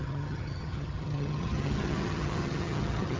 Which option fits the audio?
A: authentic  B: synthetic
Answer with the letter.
B